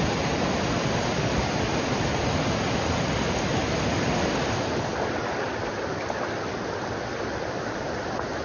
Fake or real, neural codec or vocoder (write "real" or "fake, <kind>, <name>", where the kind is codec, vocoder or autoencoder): real